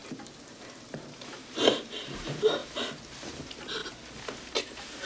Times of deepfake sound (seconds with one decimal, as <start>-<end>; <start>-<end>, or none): 0.0-2.6; 3.2-3.8